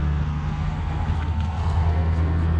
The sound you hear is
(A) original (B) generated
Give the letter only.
B